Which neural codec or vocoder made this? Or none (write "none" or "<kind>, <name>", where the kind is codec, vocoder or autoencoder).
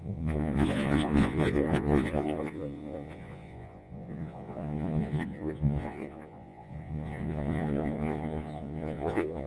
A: vocoder, Vocos